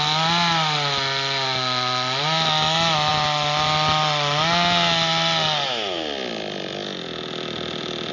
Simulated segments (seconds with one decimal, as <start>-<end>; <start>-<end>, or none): none